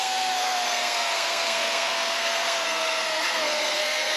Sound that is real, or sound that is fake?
fake